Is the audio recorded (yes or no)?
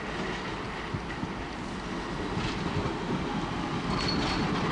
yes